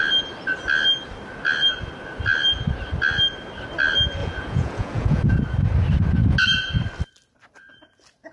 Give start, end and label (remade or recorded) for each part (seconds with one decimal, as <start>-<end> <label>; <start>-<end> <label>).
0.0-4.2 recorded; 4.2-5.4 remade; 5.4-8.3 recorded